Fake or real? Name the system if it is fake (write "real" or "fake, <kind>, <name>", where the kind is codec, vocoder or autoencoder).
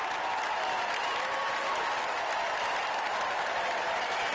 real